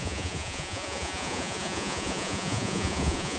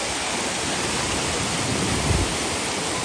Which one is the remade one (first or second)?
first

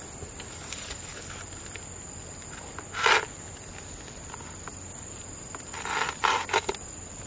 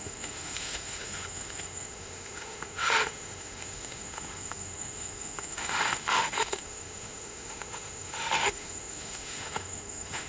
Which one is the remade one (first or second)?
second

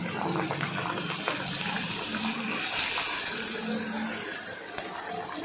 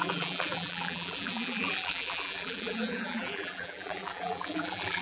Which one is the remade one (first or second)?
second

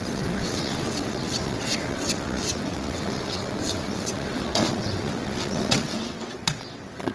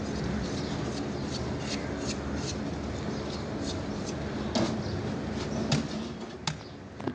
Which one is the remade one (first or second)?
first